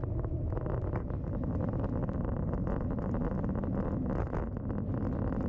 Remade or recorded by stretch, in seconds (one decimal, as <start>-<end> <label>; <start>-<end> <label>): 0.0-5.5 recorded